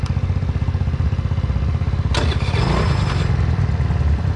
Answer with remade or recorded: recorded